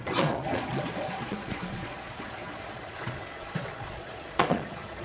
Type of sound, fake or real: fake